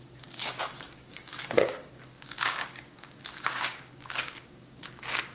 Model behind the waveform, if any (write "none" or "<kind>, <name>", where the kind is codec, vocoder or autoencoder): codec, DAC